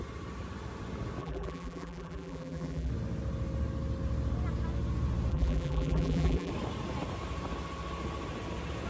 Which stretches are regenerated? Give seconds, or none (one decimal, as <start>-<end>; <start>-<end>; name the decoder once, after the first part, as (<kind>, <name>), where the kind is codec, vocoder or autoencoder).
1.2-2.9 (vocoder, BigVGAN v2); 5.3-6.5